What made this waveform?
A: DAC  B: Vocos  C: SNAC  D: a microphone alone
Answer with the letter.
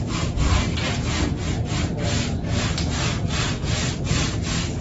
D